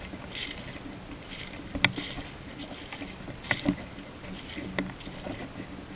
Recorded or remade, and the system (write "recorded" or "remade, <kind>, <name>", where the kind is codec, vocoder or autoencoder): recorded